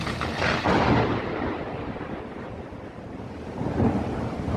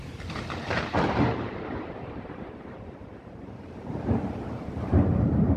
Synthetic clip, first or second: second